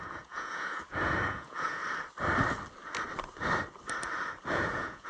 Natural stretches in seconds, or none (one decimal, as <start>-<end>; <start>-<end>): 1.8-4.5